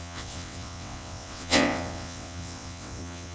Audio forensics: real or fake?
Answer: fake